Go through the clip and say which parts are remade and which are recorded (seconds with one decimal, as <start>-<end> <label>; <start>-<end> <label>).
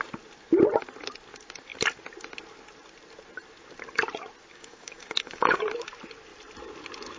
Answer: 0.0-4.5 recorded; 4.5-5.6 remade; 5.6-7.2 recorded